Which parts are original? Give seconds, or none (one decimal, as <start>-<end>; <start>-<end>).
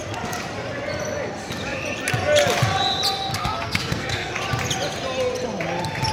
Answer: 0.0-3.3; 4.3-6.1